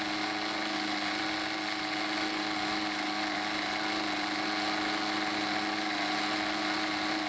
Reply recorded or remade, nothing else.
recorded